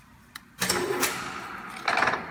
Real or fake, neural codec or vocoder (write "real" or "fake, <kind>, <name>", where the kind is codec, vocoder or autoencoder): real